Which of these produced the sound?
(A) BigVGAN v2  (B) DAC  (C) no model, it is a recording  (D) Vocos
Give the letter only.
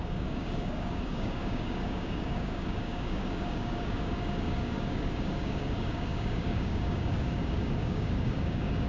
B